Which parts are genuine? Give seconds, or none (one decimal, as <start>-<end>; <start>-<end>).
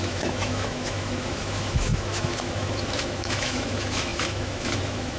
none